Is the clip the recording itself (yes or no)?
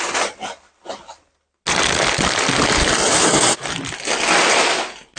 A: yes